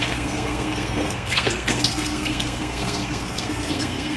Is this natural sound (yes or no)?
no